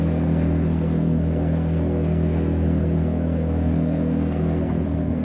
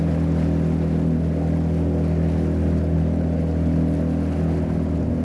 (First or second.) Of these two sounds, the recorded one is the second